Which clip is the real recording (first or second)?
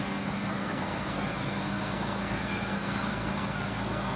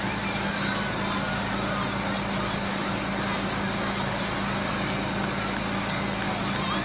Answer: second